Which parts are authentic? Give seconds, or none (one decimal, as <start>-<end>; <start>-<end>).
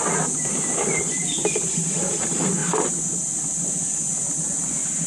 0.0-5.1